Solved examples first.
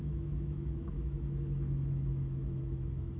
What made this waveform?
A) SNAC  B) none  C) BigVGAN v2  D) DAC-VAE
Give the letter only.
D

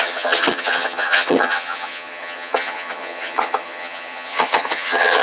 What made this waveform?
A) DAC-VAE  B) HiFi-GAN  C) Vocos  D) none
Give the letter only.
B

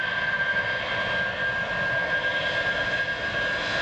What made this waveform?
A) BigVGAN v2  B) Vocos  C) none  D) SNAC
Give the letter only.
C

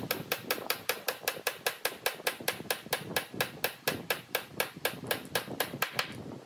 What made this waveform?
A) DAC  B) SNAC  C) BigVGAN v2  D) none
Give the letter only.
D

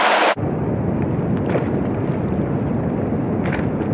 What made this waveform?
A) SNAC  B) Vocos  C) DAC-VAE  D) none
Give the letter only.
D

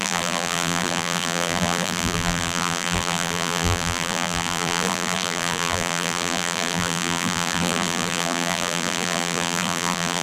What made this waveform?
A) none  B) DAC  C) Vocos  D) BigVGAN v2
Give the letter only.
D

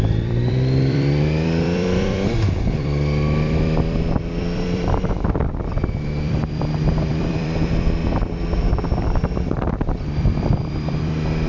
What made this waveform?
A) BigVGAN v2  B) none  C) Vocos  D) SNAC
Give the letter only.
A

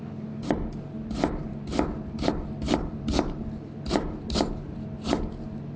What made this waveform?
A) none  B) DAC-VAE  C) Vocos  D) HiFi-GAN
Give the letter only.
A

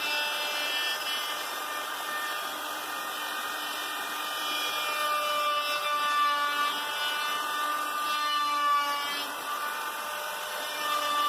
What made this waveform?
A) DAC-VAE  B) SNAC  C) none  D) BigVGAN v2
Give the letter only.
C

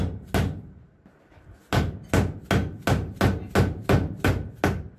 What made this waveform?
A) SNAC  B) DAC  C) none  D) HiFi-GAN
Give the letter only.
C